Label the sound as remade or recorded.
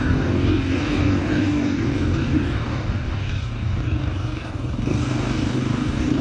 remade